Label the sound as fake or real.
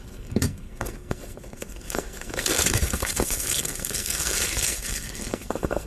fake